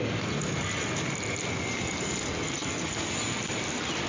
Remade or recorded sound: recorded